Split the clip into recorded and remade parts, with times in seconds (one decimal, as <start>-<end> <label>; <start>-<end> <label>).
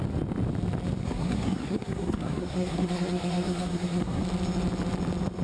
0.0-1.0 recorded; 1.0-4.2 remade; 4.2-5.4 recorded